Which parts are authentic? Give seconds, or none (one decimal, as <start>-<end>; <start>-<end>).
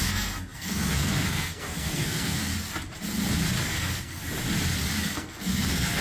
2.5-3.6; 4.2-5.0